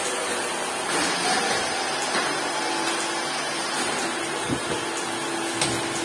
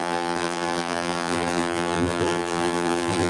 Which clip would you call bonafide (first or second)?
first